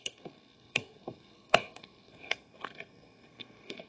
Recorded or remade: remade